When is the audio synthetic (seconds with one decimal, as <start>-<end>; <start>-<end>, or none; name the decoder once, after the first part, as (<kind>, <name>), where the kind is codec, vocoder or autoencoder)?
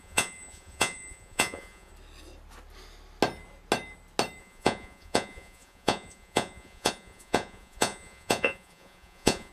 0.0-1.9 (vocoder, Vocos); 4.4-9.5